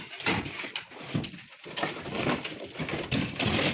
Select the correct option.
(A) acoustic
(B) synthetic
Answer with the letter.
A